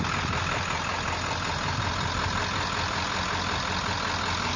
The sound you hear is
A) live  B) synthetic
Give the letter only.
A